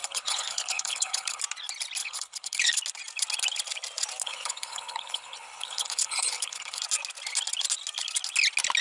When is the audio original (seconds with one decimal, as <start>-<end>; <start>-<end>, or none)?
1.4-2.0; 2.8-4.2; 6.8-8.8